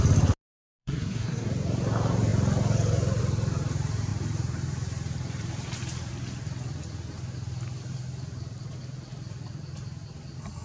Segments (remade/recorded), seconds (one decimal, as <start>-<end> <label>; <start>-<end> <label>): 0.0-0.8 recorded; 0.8-1.5 remade; 1.5-10.6 recorded